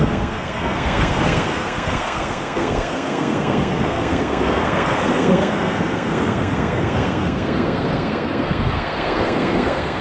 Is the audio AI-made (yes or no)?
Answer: yes